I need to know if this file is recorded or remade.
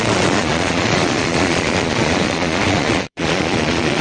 remade